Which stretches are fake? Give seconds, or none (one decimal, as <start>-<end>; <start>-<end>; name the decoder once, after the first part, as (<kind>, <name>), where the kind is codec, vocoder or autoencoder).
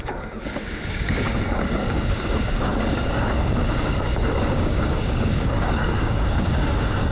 0.0-7.1 (codec, DAC)